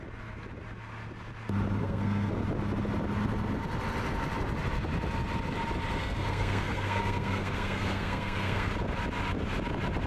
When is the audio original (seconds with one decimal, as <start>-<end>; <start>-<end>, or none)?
0.0-1.8; 2.3-6.0; 8.7-10.1

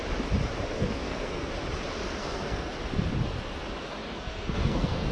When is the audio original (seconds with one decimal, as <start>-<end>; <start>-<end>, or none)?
0.0-0.8; 1.5-2.2; 2.7-4.0

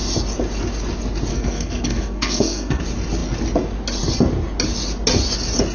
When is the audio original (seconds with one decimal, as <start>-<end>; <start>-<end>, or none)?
0.0-1.3; 2.8-5.7

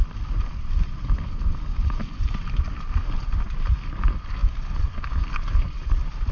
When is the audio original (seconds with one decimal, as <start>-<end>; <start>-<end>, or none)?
0.0-6.3